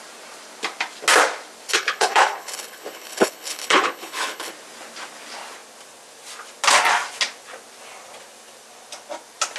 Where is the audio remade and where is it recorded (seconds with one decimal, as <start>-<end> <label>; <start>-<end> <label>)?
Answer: 0.0-1.7 recorded; 1.7-4.5 remade; 4.5-9.6 recorded